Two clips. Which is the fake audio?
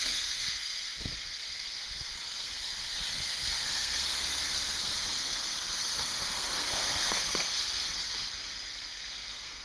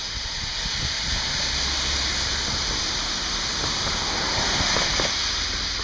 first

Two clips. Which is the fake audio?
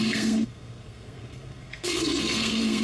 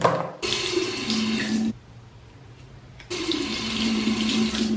first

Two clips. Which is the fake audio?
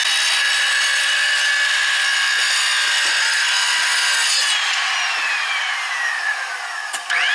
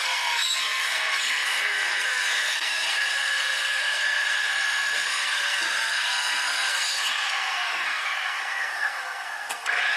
second